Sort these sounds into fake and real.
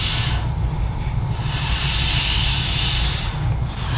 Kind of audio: fake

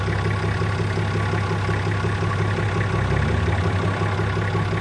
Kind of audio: real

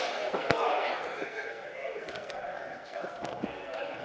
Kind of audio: fake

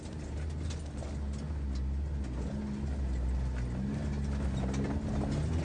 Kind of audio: real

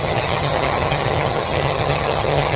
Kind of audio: fake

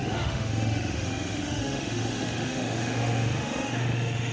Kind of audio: fake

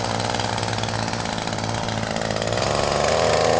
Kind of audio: real